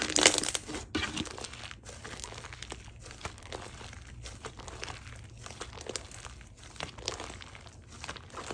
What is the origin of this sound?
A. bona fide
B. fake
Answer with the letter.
A